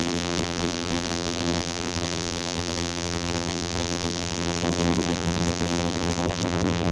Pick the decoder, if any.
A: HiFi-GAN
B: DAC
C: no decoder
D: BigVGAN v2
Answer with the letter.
D